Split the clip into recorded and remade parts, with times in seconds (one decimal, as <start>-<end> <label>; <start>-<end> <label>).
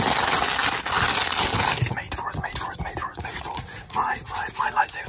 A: 0.0-3.1 recorded; 3.1-4.1 remade; 4.1-5.1 recorded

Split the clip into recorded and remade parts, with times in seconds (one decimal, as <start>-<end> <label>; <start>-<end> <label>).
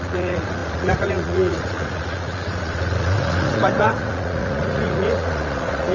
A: 0.0-5.9 remade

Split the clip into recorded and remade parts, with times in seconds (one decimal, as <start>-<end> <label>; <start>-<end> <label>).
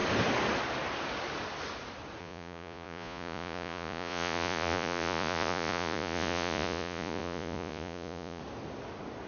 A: 0.0-2.2 recorded; 2.2-8.4 remade; 8.4-9.3 recorded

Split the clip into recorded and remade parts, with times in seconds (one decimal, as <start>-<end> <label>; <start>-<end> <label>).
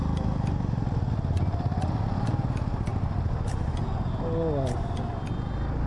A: 0.0-5.9 recorded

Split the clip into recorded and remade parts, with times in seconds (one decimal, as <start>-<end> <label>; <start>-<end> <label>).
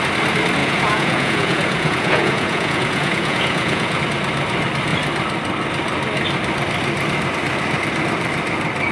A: 0.0-0.6 recorded; 0.6-4.0 remade; 4.0-8.9 recorded